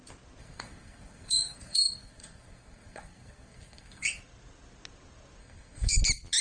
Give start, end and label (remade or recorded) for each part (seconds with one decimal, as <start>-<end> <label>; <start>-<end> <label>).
0.0-0.4 recorded; 0.4-4.2 remade; 4.2-5.4 recorded; 5.4-6.0 remade; 6.0-6.4 recorded